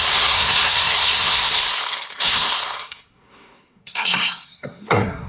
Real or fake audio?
fake